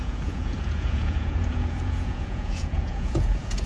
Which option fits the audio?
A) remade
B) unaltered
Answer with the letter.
A